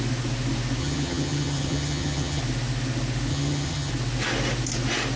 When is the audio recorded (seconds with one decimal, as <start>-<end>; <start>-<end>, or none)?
0.0-0.8; 2.4-3.3; 3.9-5.2